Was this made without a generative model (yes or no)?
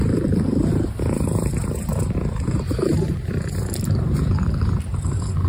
no